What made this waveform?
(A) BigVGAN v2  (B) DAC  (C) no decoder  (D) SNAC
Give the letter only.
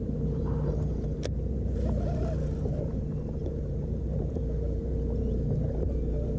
A